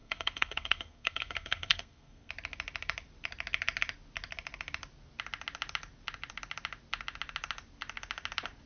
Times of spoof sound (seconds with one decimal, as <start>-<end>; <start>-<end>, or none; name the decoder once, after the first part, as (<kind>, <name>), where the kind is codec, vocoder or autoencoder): 0.0-2.3 (codec, SNAC)